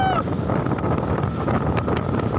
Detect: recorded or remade recorded